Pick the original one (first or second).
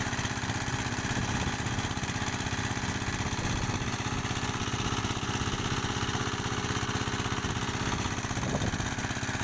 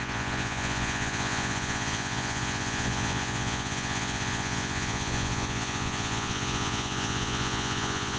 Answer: first